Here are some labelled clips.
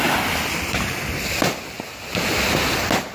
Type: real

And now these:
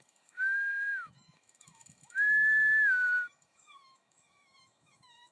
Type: fake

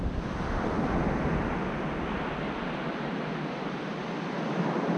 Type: real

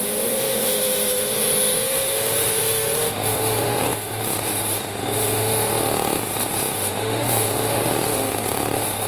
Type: fake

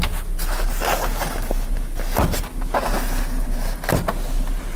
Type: real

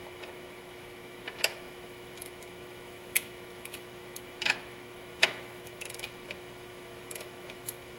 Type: fake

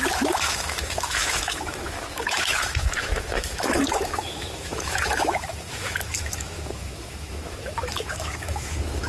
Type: fake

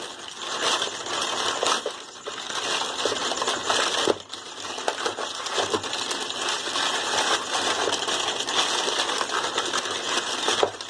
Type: real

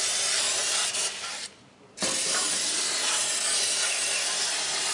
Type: real